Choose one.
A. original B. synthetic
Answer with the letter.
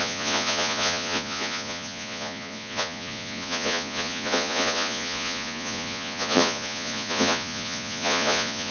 B